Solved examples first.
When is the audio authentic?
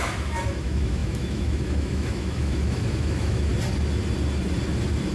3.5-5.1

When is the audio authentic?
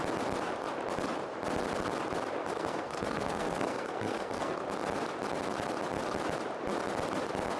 0.0-2.4; 4.6-7.6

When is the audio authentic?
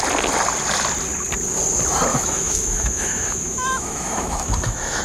0.0-2.1